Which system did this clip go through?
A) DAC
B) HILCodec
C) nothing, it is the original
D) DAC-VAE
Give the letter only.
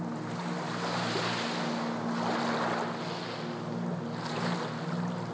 C